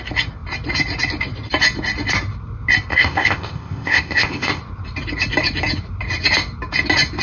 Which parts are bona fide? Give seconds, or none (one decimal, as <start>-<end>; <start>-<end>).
0.0-2.9; 4.6-7.2